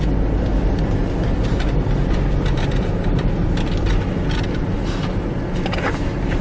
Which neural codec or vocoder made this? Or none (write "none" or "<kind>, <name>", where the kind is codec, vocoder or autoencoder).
none